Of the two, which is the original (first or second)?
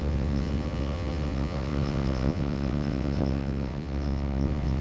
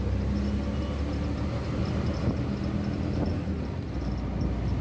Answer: second